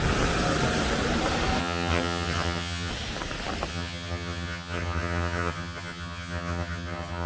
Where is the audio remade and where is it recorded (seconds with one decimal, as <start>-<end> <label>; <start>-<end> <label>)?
0.0-1.6 recorded; 1.6-2.9 remade; 2.9-3.7 recorded; 3.7-7.3 remade